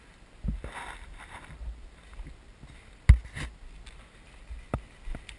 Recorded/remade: recorded